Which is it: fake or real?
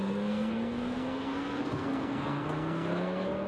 fake